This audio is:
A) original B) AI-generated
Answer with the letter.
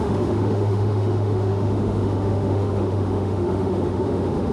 B